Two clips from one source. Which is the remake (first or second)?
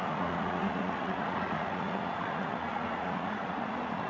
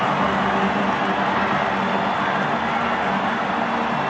first